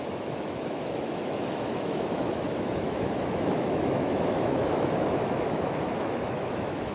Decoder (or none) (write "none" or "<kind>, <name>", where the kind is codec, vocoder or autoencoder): autoencoder, DAC-VAE